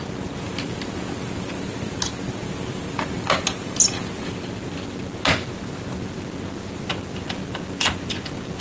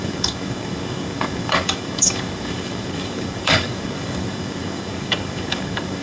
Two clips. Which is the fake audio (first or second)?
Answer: second